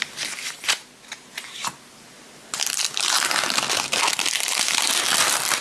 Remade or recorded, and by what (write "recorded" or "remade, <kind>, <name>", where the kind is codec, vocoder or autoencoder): recorded